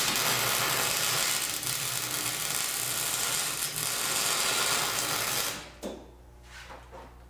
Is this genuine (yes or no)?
yes